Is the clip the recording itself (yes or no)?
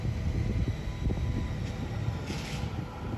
yes